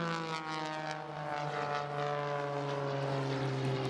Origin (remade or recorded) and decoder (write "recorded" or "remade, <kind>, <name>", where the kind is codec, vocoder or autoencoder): recorded